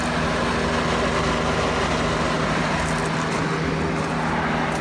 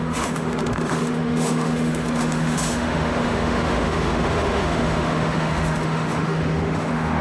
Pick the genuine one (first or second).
first